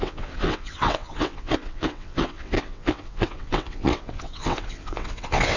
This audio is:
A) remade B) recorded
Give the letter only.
A